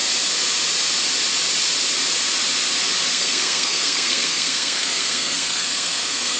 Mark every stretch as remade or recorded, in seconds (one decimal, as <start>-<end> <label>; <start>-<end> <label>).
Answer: 0.0-3.1 recorded; 3.1-6.4 remade